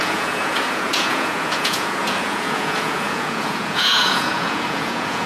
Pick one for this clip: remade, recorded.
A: remade